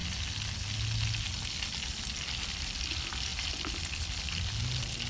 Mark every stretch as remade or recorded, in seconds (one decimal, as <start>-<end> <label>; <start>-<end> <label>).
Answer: 0.0-5.1 recorded